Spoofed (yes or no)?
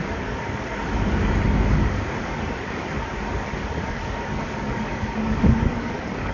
yes